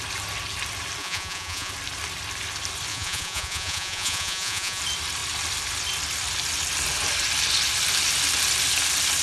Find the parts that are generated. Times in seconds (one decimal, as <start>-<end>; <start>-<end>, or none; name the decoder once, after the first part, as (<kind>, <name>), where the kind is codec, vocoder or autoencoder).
1.0-1.7 (vocoder, Vocos); 2.9-4.8